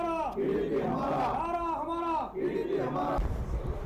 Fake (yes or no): no